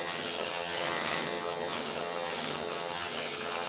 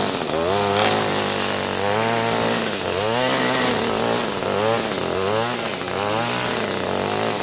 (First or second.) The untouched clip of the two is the second